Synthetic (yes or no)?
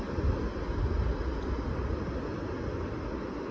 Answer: no